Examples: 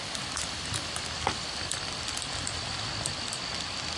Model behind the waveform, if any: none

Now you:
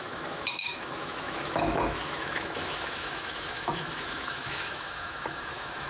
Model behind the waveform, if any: autoencoder, DAC-VAE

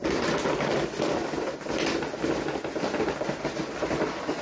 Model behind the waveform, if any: none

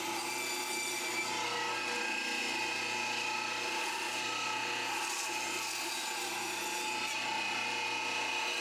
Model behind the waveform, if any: none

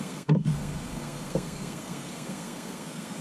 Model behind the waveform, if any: codec, SNAC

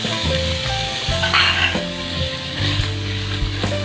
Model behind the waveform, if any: codec, DAC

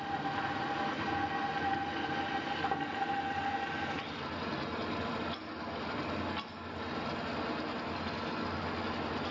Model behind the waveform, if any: none